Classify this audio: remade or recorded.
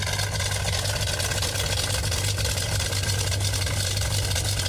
recorded